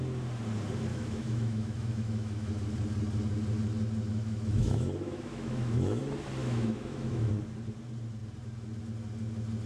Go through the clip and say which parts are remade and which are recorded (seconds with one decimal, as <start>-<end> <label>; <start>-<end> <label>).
0.0-0.9 recorded; 0.9-2.5 remade; 2.5-4.1 recorded; 4.1-6.0 remade; 6.0-6.4 recorded; 6.4-7.3 remade; 7.3-9.7 recorded